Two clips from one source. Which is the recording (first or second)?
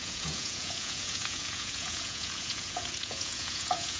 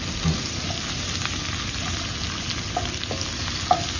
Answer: second